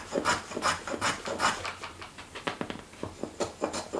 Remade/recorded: recorded